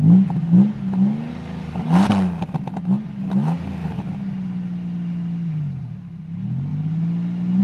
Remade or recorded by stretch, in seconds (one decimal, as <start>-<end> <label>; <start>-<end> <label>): 0.0-1.3 recorded; 1.3-2.4 remade; 2.4-7.6 recorded